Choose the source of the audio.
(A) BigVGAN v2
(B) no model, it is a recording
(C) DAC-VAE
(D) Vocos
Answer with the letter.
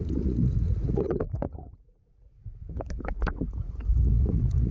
D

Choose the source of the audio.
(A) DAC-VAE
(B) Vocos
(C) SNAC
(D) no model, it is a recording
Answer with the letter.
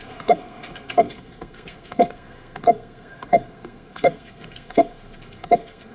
C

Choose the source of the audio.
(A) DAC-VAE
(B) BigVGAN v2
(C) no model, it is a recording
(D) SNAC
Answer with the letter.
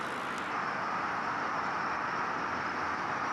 C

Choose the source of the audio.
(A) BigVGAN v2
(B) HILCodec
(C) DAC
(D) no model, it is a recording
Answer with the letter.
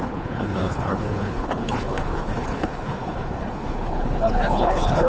B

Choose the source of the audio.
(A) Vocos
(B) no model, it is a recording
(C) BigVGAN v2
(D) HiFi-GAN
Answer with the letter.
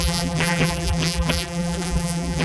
C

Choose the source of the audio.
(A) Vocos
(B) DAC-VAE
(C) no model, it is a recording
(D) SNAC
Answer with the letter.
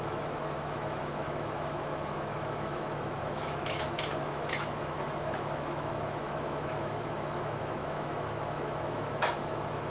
B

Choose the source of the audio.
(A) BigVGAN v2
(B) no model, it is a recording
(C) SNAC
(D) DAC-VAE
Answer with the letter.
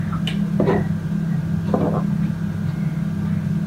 B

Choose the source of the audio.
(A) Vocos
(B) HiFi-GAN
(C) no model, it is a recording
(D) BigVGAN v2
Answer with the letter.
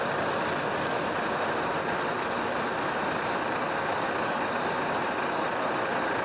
C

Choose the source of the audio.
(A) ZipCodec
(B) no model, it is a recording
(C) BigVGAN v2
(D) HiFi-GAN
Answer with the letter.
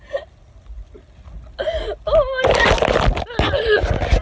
B